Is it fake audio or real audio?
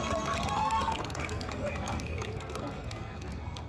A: fake